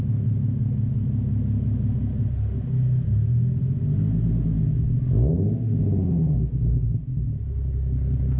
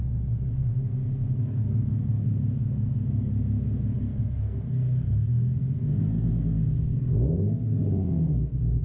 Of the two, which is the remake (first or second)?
second